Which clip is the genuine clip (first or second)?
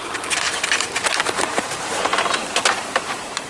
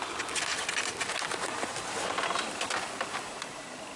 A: second